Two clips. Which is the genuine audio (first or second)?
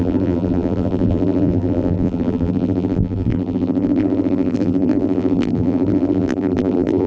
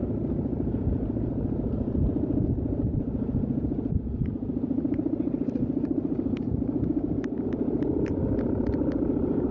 second